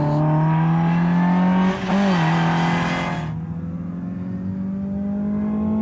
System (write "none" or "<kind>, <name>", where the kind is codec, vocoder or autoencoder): none